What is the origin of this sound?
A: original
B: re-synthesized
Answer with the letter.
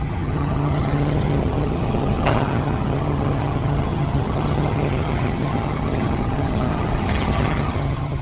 B